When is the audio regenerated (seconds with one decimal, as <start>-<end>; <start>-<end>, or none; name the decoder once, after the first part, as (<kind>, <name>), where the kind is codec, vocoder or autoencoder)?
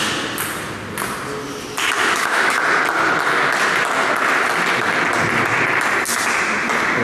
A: 2.0-2.6 (autoencoder, DAC-VAE)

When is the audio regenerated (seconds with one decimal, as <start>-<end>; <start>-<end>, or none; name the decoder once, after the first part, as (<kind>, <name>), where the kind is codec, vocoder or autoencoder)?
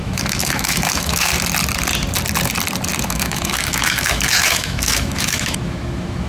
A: 0.0-1.3 (autoencoder, DAC-VAE); 3.0-6.3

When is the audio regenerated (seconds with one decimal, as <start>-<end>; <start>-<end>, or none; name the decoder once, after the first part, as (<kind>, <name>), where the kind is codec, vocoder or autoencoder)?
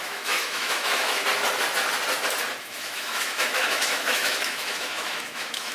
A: 0.0-1.2 (autoencoder, DAC-VAE); 2.6-5.7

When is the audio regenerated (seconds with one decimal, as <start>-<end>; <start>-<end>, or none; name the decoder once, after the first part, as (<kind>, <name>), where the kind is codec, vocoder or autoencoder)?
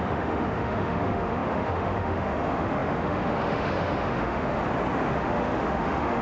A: 0.0-4.6 (autoencoder, DAC-VAE); 5.1-6.2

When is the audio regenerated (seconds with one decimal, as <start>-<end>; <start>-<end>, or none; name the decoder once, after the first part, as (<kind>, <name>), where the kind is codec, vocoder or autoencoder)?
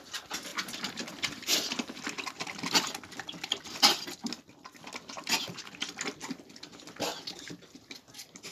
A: none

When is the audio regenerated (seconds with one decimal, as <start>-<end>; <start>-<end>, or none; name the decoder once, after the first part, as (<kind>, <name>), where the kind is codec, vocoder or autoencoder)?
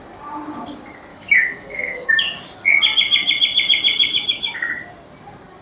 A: 1.1-2.1 (autoencoder, DAC-VAE); 3.9-4.7